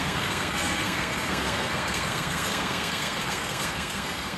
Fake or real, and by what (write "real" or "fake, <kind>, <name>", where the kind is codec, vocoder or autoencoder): fake, codec, SNAC